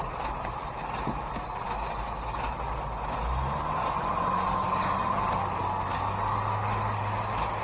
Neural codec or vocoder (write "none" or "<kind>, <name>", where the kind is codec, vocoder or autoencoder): none